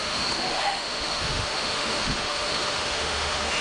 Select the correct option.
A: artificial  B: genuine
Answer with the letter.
A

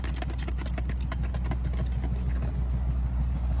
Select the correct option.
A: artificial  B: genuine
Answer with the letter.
B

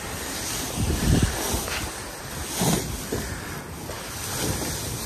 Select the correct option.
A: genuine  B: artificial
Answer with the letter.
A